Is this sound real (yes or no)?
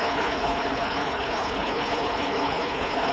no